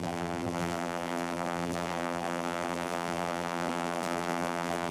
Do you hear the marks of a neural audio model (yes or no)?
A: yes